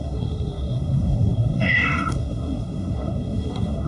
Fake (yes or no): yes